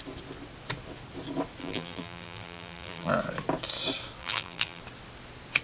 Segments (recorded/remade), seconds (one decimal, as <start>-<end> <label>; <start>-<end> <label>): 0.0-1.6 recorded; 1.6-3.1 remade; 3.1-4.2 recorded; 4.2-4.8 remade; 4.8-5.6 recorded